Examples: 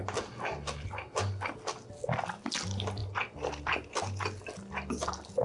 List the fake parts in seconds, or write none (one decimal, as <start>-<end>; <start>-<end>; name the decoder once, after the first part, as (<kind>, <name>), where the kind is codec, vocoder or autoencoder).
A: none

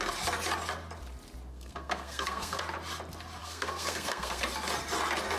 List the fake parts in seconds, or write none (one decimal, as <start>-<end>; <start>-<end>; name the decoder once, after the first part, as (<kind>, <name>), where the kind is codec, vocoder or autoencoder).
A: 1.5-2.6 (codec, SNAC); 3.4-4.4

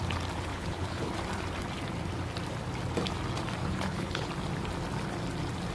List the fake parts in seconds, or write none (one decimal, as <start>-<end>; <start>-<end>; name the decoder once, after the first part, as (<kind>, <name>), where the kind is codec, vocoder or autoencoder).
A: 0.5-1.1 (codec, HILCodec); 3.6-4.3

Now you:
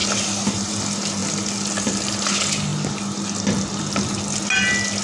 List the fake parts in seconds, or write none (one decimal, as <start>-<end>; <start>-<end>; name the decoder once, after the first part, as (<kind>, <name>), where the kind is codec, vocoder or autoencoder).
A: none